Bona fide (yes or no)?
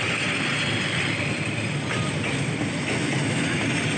yes